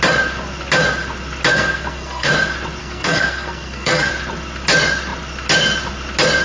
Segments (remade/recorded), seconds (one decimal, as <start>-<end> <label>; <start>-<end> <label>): 0.0-1.5 recorded; 1.5-2.3 remade; 2.3-2.8 recorded; 2.8-4.1 remade; 4.1-6.4 recorded